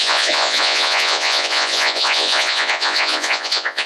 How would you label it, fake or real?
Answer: fake